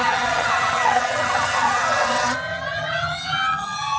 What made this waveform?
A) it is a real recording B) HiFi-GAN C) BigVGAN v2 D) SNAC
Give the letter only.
B